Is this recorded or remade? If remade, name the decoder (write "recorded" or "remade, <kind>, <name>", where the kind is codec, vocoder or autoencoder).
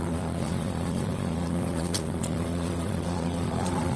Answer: remade, vocoder, Vocos